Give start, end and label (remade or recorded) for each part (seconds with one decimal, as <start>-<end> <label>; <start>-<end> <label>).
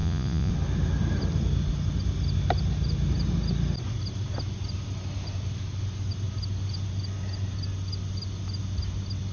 0.0-0.5 remade; 0.5-9.3 recorded